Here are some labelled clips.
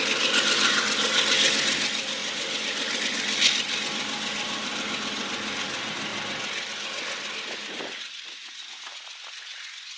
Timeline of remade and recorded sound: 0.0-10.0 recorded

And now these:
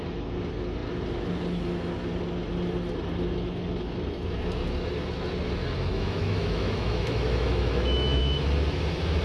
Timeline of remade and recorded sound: 0.0-5.9 recorded; 5.9-8.2 remade; 8.2-9.2 recorded